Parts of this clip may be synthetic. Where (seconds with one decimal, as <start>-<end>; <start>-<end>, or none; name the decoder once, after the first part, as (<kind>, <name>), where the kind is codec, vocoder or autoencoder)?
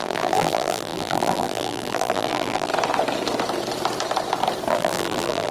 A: 0.0-2.7 (vocoder, BigVGAN v2); 4.7-5.5